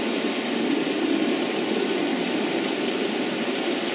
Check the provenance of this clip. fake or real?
real